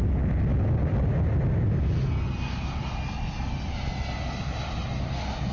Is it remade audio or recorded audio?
recorded